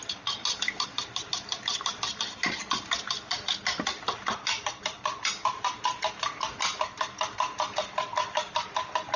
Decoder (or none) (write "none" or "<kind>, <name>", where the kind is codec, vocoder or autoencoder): none